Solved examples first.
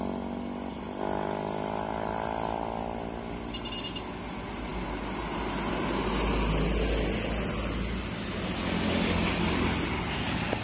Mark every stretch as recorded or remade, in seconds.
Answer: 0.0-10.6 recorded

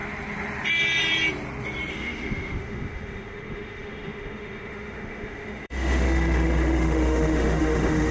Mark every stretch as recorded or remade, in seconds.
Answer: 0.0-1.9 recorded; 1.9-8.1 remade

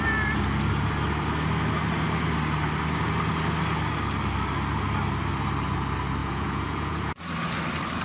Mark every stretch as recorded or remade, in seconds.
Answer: 0.0-6.2 recorded; 6.2-7.2 remade; 7.2-8.0 recorded